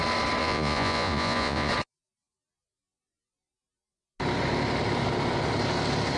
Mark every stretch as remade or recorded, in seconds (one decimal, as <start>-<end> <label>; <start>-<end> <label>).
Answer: 0.0-0.4 recorded; 0.4-1.7 remade; 1.7-6.2 recorded